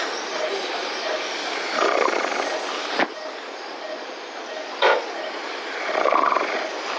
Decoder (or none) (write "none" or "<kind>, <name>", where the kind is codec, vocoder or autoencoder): vocoder, BigVGAN v2